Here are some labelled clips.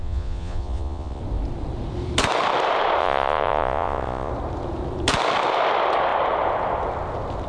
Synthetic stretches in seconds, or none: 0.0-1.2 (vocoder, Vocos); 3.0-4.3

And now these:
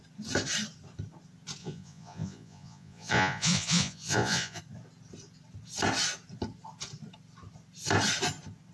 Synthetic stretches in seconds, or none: 1.6-4.6 (vocoder, Vocos)

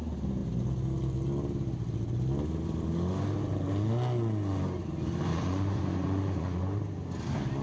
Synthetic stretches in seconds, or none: 5.3-6.6 (vocoder, Vocos)

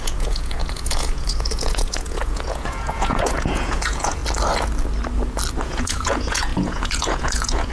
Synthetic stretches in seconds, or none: 0.0-4.2 (vocoder, Vocos); 5.6-7.7

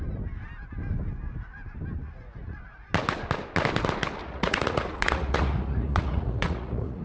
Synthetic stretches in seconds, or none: 2.0-2.9 (vocoder, Vocos); 4.2-7.0